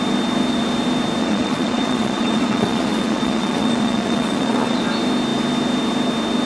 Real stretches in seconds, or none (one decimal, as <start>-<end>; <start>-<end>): 0.0-1.2; 4.8-6.5

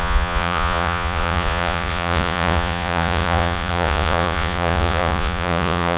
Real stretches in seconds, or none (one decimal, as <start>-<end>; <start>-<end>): none

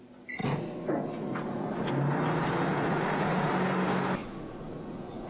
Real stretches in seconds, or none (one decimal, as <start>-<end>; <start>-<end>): 0.0-0.4; 1.9-2.7; 3.5-4.2